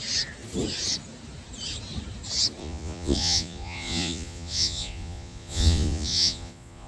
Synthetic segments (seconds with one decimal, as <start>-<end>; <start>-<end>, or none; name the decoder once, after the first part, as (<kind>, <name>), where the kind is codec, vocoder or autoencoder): 2.6-6.9 (vocoder, Vocos)